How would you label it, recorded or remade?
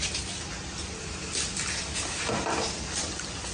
recorded